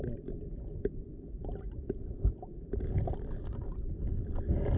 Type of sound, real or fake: fake